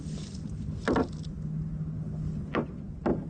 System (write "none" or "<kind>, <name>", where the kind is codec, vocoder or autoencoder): none